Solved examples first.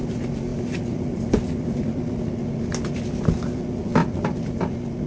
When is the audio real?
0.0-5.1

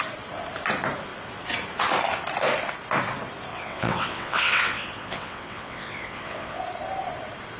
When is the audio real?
0.0-3.5; 6.6-7.6